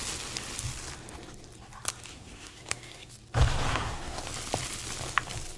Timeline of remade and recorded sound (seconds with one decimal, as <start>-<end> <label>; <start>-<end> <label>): 0.0-2.1 recorded; 2.1-3.1 remade; 3.1-3.7 recorded; 3.7-4.2 remade; 4.2-5.6 recorded